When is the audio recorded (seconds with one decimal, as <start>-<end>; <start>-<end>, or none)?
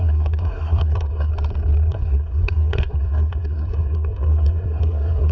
1.3-1.9